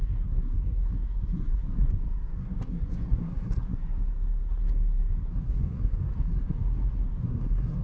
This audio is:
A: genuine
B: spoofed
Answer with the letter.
B